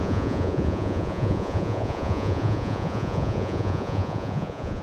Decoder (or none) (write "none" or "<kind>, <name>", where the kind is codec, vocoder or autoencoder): vocoder, Vocos